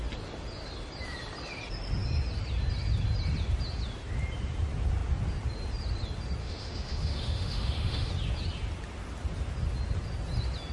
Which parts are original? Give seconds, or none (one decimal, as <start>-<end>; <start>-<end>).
0.0-6.4; 8.1-10.7